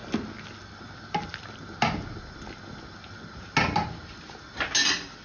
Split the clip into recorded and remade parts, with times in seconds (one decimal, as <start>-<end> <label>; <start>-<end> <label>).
0.0-5.2 recorded